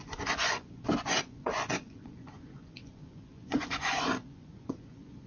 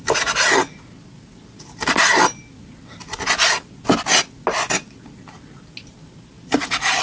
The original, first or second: second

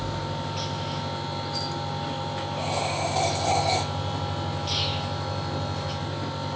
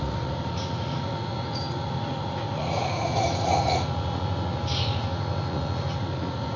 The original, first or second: first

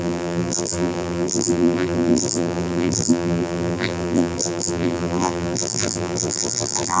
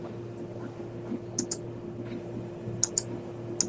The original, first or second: second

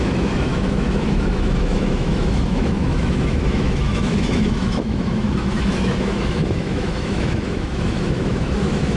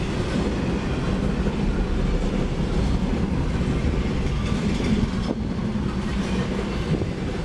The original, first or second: second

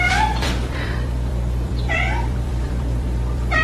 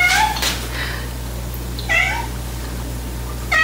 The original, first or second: second